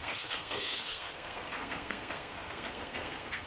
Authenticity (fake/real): fake